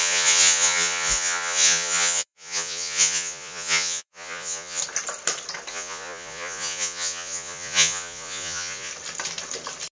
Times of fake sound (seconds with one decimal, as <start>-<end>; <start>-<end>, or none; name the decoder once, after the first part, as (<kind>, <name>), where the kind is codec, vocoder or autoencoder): 0.0-4.8 (vocoder, Vocos); 5.7-8.9